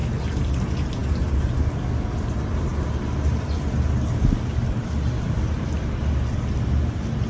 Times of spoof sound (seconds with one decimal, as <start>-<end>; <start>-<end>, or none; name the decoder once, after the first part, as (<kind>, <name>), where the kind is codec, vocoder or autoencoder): none